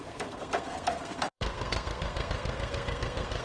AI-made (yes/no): yes